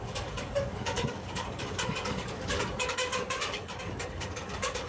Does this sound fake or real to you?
fake